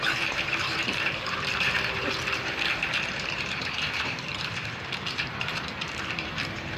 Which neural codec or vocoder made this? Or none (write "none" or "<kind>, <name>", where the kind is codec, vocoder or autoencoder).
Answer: vocoder, BigVGAN v2